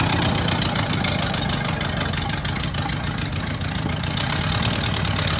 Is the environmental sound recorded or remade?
recorded